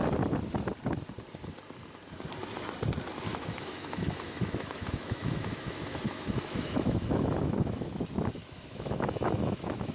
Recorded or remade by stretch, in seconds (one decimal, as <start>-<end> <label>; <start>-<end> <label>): 0.0-3.3 recorded; 3.3-7.9 remade; 7.9-8.4 recorded; 8.4-9.9 remade